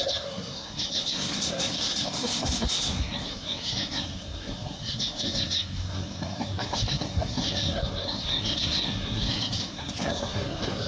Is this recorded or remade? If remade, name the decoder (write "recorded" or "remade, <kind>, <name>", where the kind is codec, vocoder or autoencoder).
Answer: remade, codec, SNAC